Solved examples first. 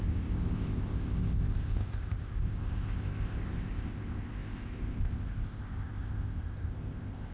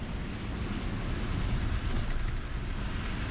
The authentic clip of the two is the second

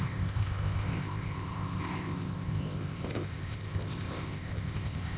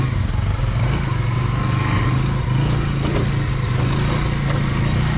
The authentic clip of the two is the second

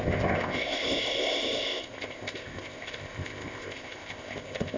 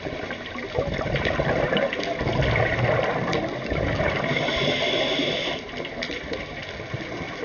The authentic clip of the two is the second